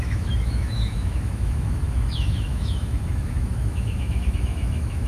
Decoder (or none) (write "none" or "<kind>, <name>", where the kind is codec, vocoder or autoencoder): autoencoder, DAC-VAE